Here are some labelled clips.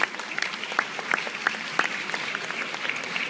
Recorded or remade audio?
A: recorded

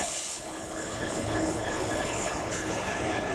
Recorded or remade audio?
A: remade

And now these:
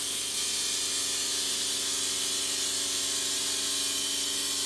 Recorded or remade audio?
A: recorded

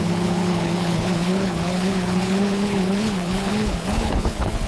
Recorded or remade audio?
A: remade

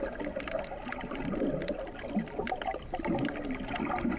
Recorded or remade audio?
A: recorded